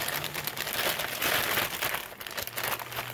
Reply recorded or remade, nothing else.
recorded